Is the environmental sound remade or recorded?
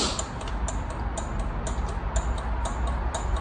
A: recorded